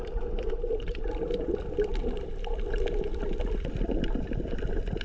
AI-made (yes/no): no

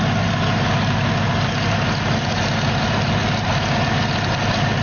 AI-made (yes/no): no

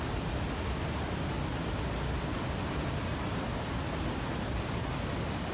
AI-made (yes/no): no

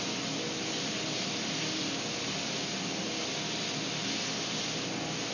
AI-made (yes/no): no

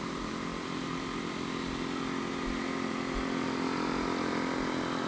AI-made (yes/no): no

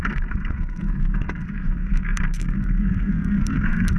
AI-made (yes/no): yes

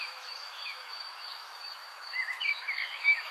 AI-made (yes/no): yes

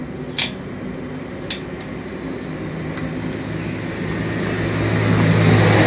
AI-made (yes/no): no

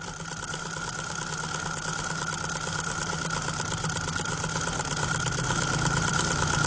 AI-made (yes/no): no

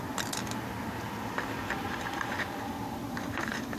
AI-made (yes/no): no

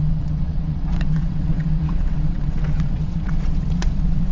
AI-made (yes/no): yes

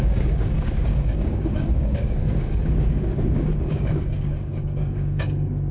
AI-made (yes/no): yes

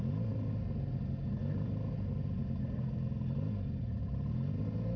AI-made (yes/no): no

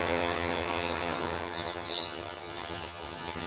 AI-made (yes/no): yes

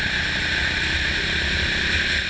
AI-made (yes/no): no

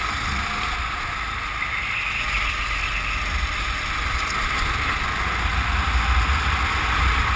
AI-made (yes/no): no